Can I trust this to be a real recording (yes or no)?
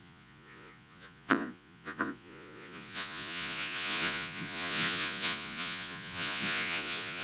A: no